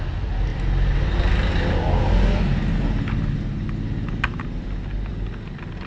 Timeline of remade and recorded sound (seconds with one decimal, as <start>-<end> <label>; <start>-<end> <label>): 0.0-5.9 recorded